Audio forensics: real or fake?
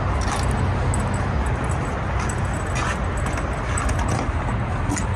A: real